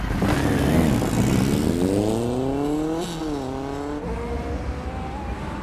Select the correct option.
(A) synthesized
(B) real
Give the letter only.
B